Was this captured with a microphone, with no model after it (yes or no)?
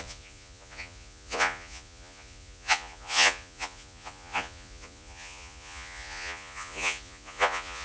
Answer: no